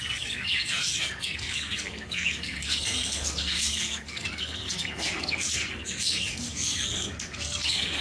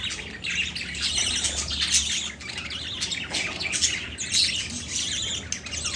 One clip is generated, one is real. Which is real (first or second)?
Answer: second